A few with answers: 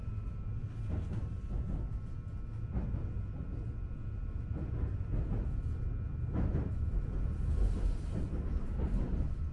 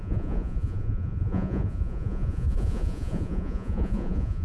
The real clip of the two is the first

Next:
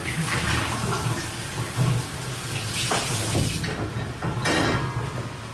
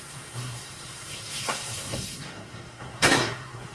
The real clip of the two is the first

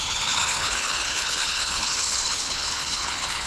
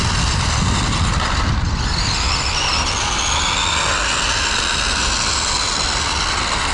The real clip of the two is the second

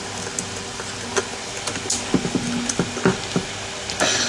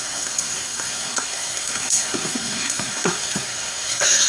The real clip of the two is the first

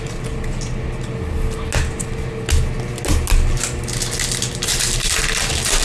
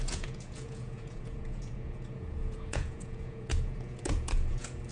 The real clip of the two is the first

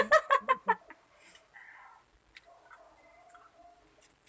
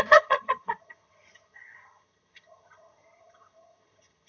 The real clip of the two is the first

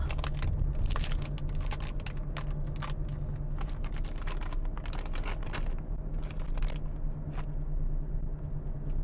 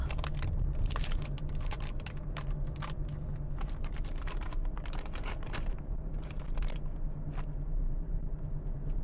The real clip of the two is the first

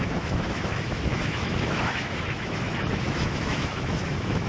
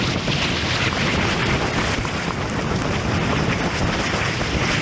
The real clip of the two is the second